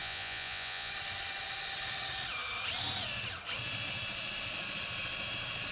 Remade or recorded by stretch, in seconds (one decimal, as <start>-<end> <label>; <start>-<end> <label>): 0.0-0.9 remade; 0.9-5.7 recorded